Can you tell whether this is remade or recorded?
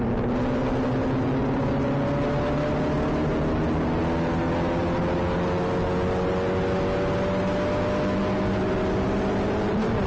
recorded